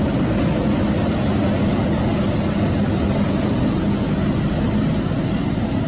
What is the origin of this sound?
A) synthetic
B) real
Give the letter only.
B